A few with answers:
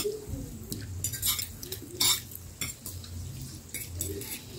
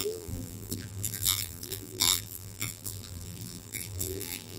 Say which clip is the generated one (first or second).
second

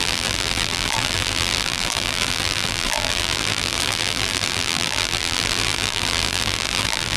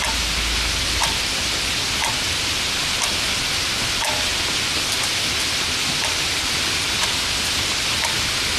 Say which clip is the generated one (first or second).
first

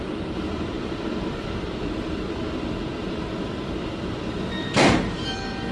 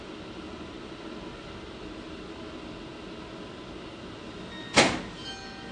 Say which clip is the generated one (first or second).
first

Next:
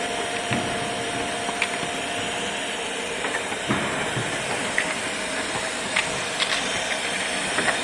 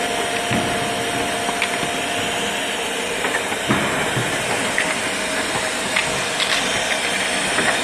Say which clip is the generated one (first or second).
first